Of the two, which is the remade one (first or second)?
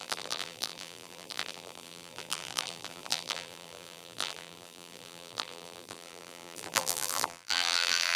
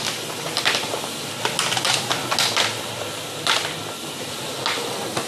first